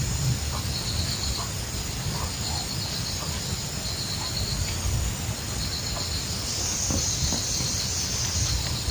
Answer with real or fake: real